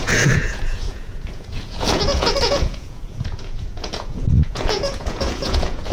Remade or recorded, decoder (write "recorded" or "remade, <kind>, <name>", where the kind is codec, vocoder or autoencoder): remade, vocoder, Vocos